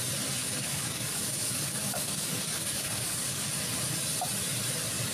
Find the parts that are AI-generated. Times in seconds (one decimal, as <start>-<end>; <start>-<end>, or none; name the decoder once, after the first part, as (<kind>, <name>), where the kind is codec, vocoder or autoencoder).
0.4-3.5 (codec, DAC)